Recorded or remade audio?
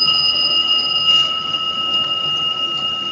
remade